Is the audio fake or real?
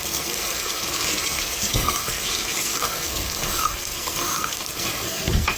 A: fake